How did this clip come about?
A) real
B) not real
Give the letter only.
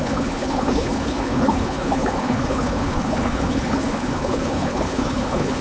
B